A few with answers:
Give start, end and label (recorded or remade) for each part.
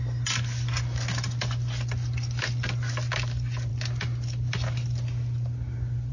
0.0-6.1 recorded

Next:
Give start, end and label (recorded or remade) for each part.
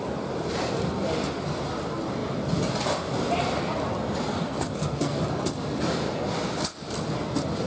0.0-4.3 recorded; 4.3-5.2 remade; 5.2-7.7 recorded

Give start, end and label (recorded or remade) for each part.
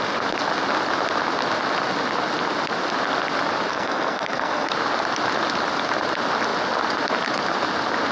0.0-3.7 recorded; 3.7-4.7 remade; 4.7-8.1 recorded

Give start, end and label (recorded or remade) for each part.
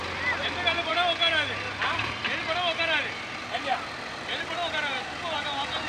0.0-5.9 recorded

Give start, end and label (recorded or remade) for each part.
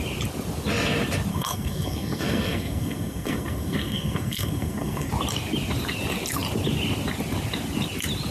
0.0-1.3 recorded; 1.3-5.1 remade; 5.1-8.3 recorded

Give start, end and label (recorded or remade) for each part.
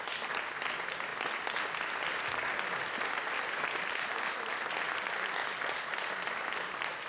0.0-7.1 recorded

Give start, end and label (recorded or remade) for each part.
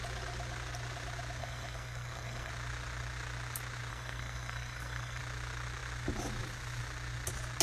0.0-1.4 recorded; 1.4-2.5 remade; 2.5-3.9 recorded; 3.9-5.2 remade; 5.2-7.6 recorded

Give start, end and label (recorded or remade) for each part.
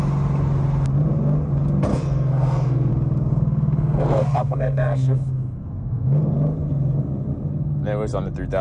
0.0-1.9 recorded; 1.9-2.9 remade; 2.9-3.3 recorded; 3.3-6.3 remade; 6.3-8.6 recorded